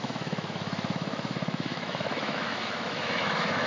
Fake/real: fake